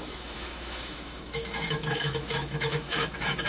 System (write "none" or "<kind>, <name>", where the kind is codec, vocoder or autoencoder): autoencoder, DAC-VAE